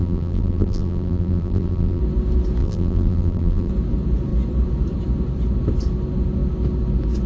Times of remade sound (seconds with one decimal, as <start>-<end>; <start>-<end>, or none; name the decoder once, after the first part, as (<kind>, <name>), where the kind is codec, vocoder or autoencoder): 0.0-2.0 (vocoder, BigVGAN v2); 2.6-3.7